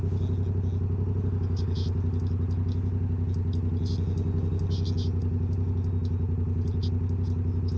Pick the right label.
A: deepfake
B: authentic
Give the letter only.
B